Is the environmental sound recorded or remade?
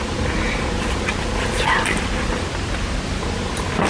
recorded